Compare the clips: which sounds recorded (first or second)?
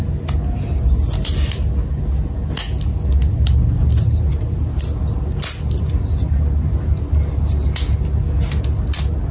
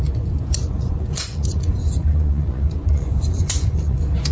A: first